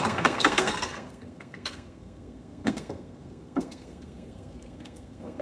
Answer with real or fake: fake